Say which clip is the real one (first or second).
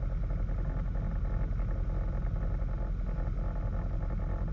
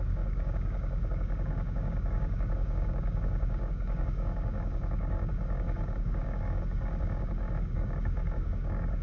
first